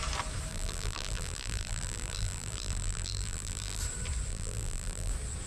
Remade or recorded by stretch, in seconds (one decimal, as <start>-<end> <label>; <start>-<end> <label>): 0.0-0.5 recorded; 0.5-3.8 remade; 3.8-4.3 recorded; 4.3-5.1 remade; 5.1-5.5 recorded